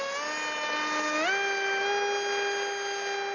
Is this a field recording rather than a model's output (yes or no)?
yes